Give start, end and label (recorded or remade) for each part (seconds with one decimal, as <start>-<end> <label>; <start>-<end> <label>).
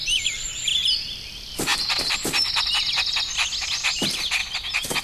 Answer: 0.0-0.5 remade; 0.5-5.0 recorded